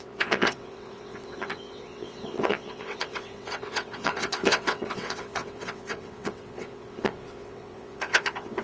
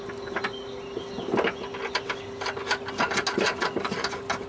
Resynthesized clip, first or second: first